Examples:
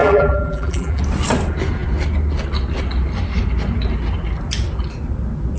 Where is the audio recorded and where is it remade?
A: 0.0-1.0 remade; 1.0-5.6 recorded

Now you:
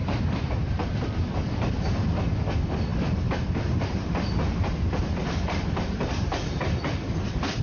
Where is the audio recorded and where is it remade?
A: 0.0-1.0 remade; 1.0-2.9 recorded; 2.9-7.0 remade; 7.0-7.6 recorded

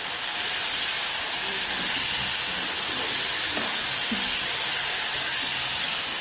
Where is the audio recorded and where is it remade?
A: 0.0-3.7 remade; 3.7-6.2 recorded